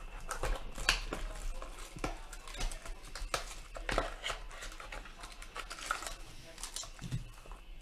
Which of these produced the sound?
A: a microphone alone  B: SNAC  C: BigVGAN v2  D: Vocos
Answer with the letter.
A